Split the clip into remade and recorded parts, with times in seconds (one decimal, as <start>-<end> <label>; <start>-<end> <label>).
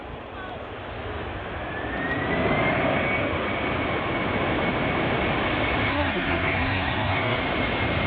0.0-5.9 recorded; 5.9-7.4 remade; 7.4-8.1 recorded